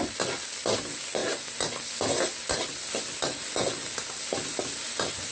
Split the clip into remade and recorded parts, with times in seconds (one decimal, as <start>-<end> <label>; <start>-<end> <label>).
0.0-5.3 recorded